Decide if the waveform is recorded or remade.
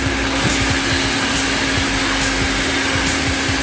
recorded